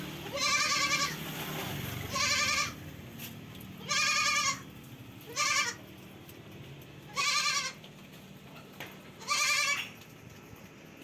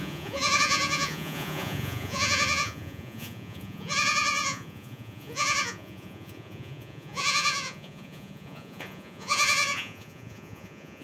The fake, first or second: second